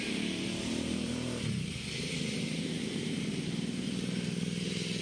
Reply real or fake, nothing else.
fake